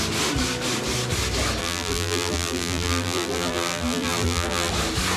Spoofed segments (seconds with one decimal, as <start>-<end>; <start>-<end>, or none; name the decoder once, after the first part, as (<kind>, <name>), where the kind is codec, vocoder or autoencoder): 1.6-4.7 (vocoder, BigVGAN v2)